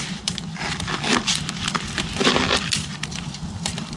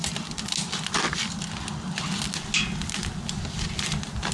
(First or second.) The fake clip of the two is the first